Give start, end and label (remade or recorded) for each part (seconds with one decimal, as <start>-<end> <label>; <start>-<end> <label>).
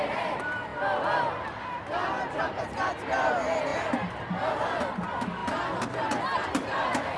0.0-0.7 remade; 0.7-2.6 recorded; 2.6-3.7 remade; 3.7-4.5 recorded; 4.5-5.4 remade; 5.4-6.1 recorded; 6.1-7.2 remade